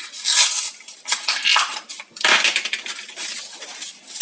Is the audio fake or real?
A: real